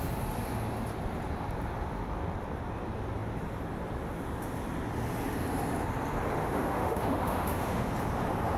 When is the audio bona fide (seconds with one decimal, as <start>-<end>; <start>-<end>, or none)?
0.0-6.4; 7.9-8.6

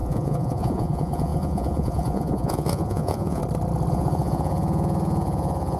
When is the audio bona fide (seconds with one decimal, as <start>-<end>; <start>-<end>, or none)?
3.4-3.9

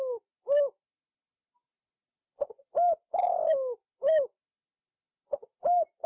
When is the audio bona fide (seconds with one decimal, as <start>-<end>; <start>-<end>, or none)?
0.0-6.1

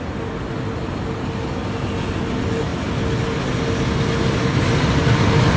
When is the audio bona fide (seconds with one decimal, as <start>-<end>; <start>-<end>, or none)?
0.0-5.6

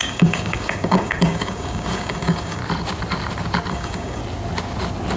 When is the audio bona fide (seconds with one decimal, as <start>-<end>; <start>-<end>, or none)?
2.6-3.7; 4.2-5.2

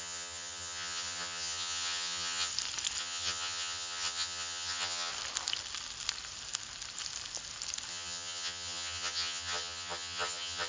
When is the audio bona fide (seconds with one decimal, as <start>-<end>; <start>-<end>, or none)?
2.5-3.0; 5.1-7.9

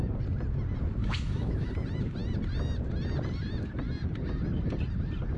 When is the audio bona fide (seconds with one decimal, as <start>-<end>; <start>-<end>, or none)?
0.0-1.0; 1.7-5.4